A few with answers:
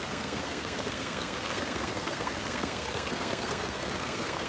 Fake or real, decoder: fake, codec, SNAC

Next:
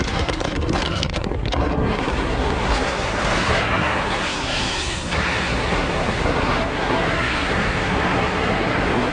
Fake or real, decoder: fake, codec, SNAC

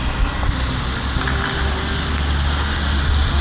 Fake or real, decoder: real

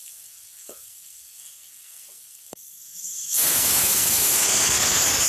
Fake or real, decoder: fake, codec, SNAC